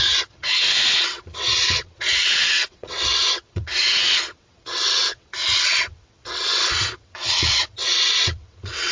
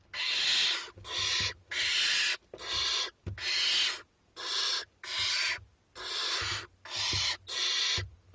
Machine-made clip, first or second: first